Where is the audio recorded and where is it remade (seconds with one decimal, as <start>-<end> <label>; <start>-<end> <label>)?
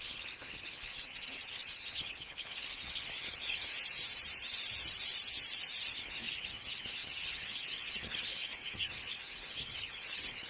0.0-0.9 remade; 0.9-1.9 recorded; 1.9-3.7 remade; 3.7-5.9 recorded; 5.9-10.5 remade